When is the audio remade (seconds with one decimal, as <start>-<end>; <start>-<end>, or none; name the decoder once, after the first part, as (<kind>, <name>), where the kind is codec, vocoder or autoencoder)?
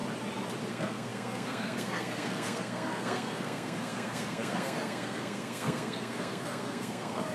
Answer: 0.7-7.3 (codec, SNAC)